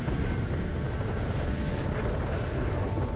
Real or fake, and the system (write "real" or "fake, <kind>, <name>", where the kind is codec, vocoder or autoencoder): real